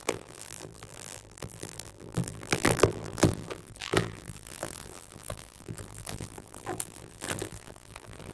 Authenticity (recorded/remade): remade